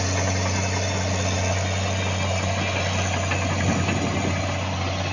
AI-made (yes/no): no